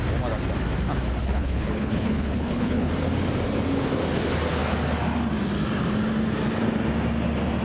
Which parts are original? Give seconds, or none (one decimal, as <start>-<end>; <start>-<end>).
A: 0.0-1.2; 2.9-7.6